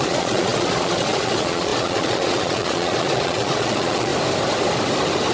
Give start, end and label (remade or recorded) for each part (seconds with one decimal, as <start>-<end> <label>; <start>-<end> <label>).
0.0-4.1 remade; 4.1-5.3 recorded